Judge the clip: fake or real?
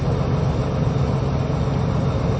real